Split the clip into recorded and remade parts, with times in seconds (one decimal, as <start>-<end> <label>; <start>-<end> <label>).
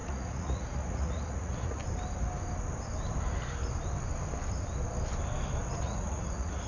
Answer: 0.0-1.8 remade; 1.8-5.8 recorded; 5.8-6.7 remade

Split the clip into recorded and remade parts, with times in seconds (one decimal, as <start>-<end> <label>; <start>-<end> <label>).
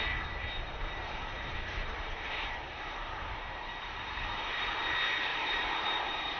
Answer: 0.0-1.0 recorded; 1.0-4.5 remade; 4.5-5.3 recorded; 5.3-6.4 remade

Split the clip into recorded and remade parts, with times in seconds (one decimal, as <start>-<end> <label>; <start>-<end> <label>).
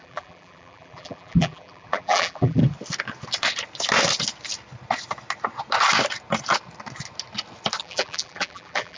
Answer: 0.0-2.6 remade; 2.6-7.8 recorded; 7.8-9.0 remade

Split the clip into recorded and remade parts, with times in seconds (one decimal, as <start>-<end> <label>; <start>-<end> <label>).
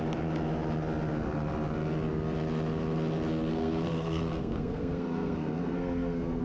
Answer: 0.0-3.5 recorded; 3.5-6.4 remade